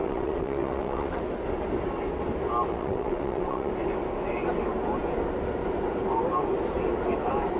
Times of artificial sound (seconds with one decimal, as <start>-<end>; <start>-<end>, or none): 0.0-1.2; 2.7-3.7

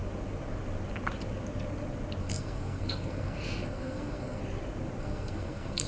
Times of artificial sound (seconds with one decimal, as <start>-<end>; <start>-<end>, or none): 2.2-4.4; 5.0-5.9

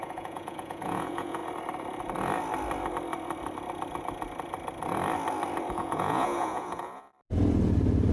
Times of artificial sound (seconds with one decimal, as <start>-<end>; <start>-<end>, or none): 0.0-1.4; 5.7-7.1

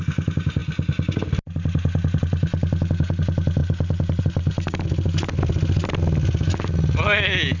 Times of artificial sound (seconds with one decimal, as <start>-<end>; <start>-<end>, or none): 3.6-4.2

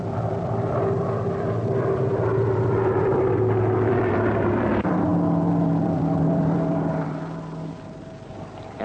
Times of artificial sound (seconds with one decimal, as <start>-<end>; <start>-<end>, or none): 0.0-8.8

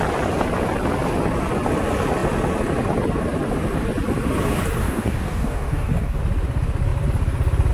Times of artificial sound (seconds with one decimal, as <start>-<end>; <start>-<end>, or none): 4.8-6.2